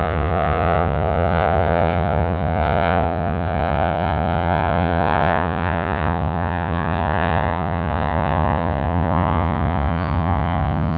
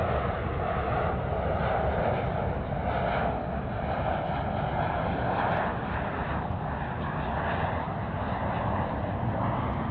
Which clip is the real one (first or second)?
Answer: second